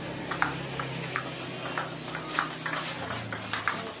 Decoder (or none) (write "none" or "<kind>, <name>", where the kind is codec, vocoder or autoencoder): none